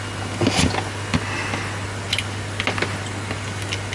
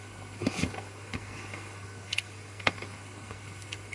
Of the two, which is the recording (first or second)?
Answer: first